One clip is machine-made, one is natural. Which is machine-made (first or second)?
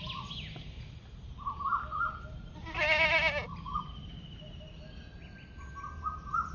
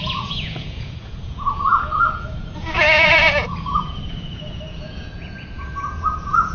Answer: second